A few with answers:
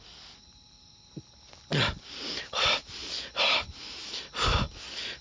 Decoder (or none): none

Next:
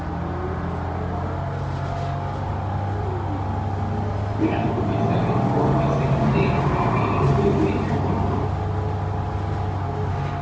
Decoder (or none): none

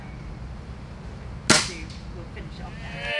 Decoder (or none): none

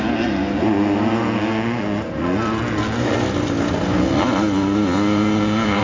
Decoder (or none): none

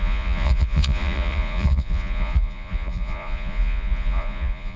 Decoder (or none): vocoder, Vocos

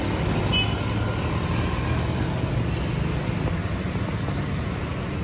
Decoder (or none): none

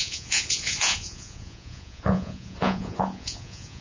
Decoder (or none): vocoder, Vocos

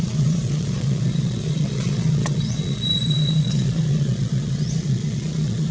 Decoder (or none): vocoder, Vocos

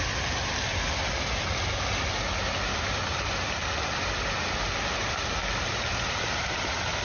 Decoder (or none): none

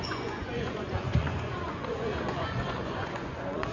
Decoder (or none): vocoder, Vocos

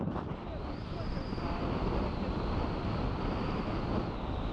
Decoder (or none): none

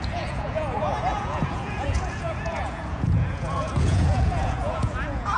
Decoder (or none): vocoder, Vocos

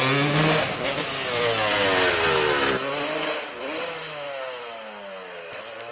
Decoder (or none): none